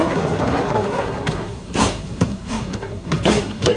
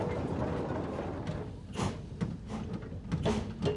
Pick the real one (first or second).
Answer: second